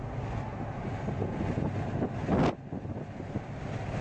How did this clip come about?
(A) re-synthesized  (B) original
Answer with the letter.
B